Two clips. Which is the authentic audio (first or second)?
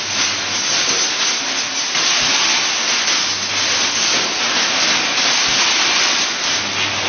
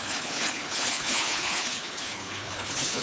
first